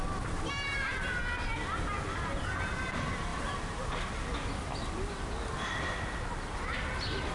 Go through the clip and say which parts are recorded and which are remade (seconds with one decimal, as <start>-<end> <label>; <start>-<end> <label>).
0.0-7.3 recorded